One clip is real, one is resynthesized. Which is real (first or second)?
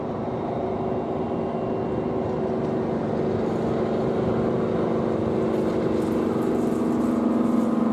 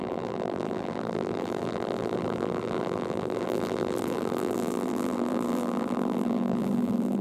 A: first